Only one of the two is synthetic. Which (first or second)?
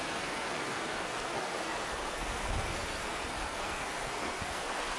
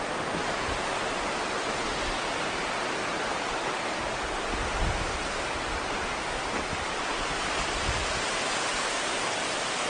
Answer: first